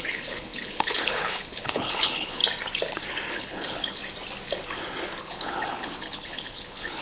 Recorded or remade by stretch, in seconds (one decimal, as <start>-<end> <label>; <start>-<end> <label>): 0.0-2.4 remade; 2.4-3.3 recorded; 3.3-4.0 remade; 4.0-5.2 recorded; 5.2-7.0 remade